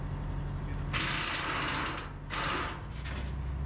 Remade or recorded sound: recorded